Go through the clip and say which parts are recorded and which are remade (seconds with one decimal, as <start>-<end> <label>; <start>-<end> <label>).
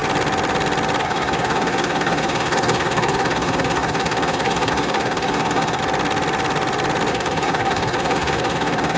0.0-1.0 recorded; 1.0-5.8 remade; 5.8-7.1 recorded; 7.1-9.0 remade